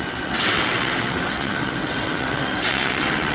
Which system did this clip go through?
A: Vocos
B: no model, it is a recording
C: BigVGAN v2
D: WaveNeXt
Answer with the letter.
D